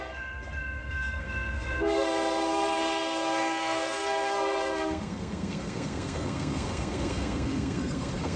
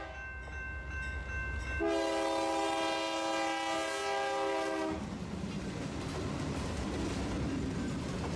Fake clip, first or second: first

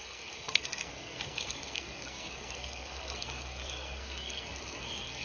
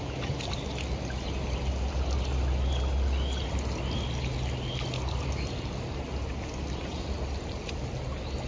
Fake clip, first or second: first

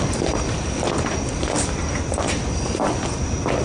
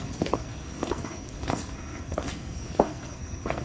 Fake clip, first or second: second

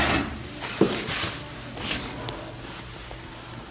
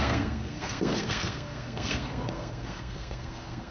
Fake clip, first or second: second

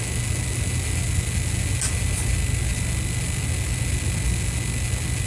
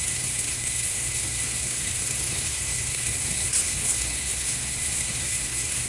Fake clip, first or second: second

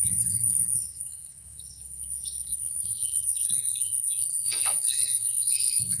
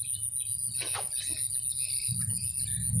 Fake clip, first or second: first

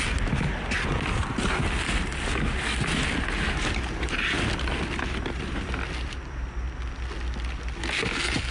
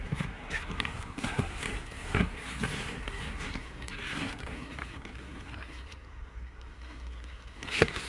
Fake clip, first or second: second